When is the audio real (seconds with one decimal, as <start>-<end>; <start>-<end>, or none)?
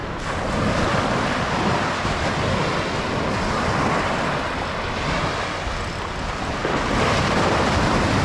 0.0-8.2